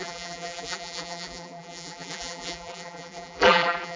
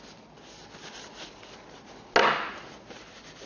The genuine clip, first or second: second